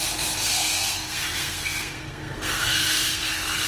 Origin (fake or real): fake